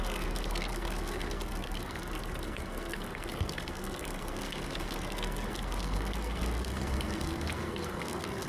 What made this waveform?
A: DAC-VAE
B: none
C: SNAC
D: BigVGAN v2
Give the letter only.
C